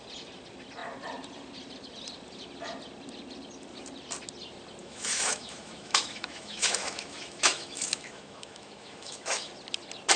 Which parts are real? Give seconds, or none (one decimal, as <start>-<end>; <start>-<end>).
0.0-4.8; 9.5-10.2